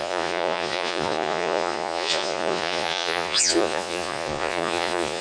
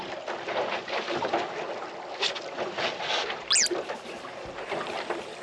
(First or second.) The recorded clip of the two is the second